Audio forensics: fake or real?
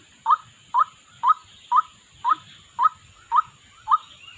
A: real